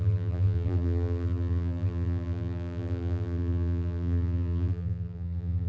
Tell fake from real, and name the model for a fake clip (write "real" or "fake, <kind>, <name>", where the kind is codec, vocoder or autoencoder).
fake, vocoder, BigVGAN v2